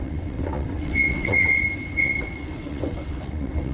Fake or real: fake